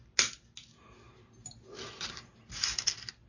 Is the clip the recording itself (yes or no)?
yes